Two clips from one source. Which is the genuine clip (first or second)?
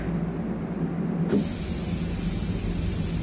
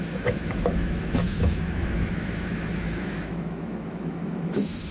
first